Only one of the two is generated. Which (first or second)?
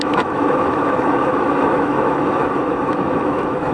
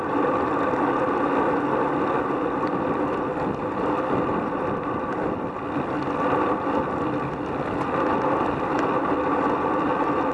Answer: first